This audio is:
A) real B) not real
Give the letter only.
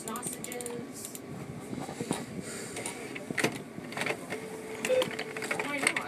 A